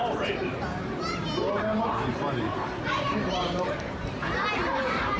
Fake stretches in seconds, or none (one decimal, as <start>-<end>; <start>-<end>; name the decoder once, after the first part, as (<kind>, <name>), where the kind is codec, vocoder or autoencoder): 0.0-5.2 (vocoder, BigVGAN v2)